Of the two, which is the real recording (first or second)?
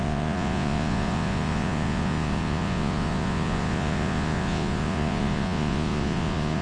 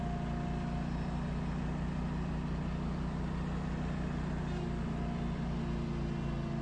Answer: second